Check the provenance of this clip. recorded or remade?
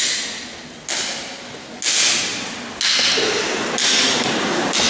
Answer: recorded